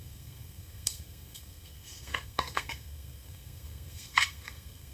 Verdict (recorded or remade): remade